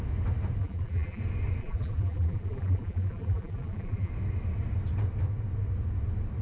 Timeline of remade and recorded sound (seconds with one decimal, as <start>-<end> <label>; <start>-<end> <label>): 0.0-0.6 recorded; 0.6-1.2 remade; 1.2-1.6 recorded; 1.6-4.1 remade; 4.1-6.4 recorded